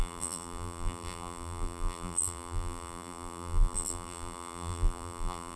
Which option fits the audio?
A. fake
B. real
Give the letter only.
A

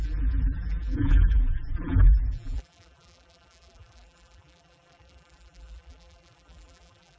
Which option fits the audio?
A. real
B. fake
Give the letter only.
B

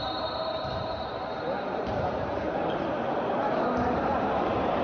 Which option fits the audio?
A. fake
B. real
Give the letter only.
A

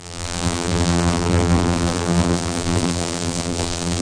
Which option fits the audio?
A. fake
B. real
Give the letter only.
A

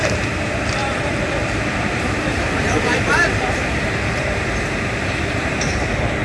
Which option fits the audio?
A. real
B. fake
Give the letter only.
B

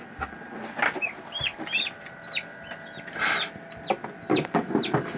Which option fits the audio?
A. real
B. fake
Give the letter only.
A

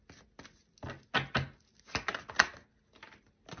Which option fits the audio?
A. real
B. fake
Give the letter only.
A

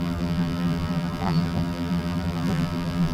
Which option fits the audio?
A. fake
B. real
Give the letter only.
A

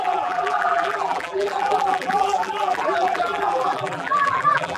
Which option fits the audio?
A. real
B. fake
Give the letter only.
B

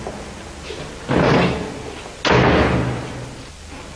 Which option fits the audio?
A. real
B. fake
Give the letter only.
A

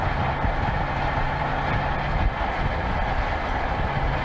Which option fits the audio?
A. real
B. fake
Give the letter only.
A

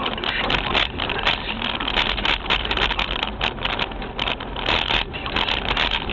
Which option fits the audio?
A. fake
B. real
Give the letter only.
A